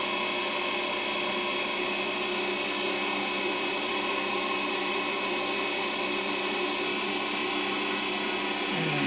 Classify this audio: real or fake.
real